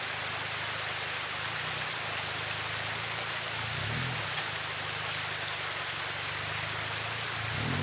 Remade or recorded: recorded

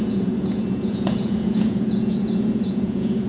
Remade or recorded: remade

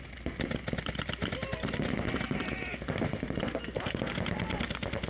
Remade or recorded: recorded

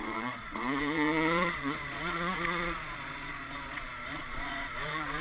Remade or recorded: remade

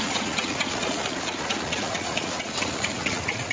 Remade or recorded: remade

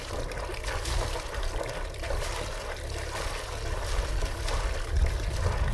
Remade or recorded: recorded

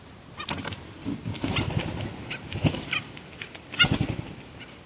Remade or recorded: recorded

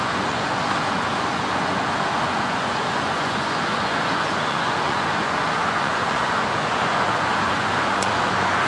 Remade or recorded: remade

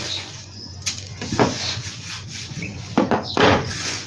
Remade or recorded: remade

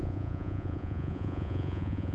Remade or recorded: remade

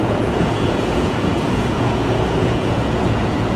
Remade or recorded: remade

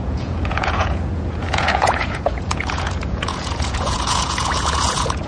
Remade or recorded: remade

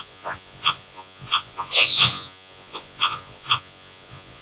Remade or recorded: remade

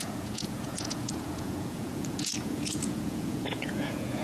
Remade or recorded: remade